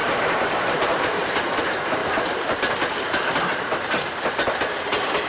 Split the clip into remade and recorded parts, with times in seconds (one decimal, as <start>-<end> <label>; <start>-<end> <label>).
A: 0.0-1.6 remade; 1.6-2.0 recorded; 2.0-2.7 remade; 2.7-5.3 recorded